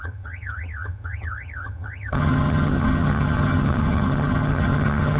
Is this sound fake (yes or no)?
yes